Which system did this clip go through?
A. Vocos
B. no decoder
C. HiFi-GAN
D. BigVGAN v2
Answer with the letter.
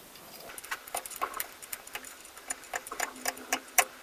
D